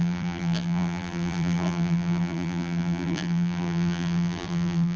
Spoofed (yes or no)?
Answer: yes